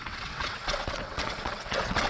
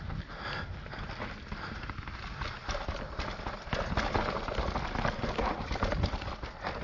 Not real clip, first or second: first